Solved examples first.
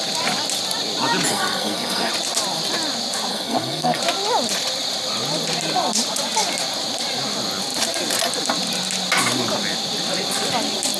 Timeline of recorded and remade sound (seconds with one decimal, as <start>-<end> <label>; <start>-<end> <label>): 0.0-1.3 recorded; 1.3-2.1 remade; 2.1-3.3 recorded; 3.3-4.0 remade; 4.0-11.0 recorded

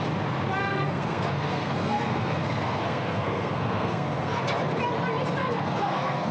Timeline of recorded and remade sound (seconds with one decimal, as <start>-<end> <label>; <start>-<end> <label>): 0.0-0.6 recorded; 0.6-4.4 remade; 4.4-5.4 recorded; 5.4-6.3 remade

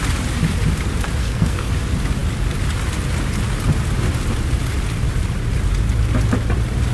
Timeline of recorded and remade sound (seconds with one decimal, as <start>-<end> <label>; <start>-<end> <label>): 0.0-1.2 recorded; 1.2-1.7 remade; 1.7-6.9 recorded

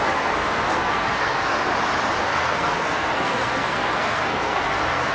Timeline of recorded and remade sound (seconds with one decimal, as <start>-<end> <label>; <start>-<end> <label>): 0.0-1.7 remade; 1.7-2.2 recorded; 2.2-5.1 remade

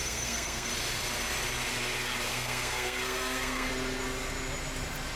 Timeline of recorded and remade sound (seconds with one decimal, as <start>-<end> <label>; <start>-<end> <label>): 0.0-0.7 remade; 0.7-2.3 recorded; 2.3-3.7 remade; 3.7-5.2 recorded

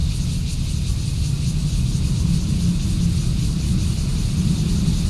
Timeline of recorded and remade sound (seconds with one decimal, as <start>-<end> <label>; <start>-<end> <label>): 0.0-5.1 recorded

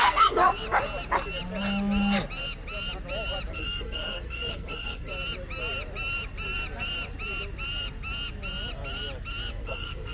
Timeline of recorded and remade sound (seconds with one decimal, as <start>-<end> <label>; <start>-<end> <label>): 0.0-0.5 remade; 0.5-3.5 recorded; 3.5-5.1 remade; 5.1-9.5 recorded; 9.5-10.1 remade